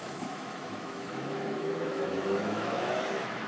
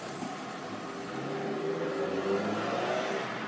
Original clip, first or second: second